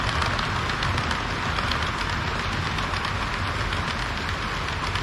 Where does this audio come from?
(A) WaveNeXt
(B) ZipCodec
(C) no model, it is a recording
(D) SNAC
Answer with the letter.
C